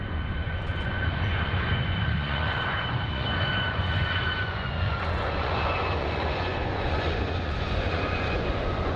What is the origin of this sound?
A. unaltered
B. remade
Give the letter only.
B